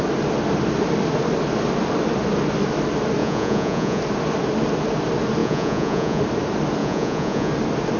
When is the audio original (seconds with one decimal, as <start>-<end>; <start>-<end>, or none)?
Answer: 0.0-3.2; 4.0-5.4; 6.2-6.8; 7.5-8.0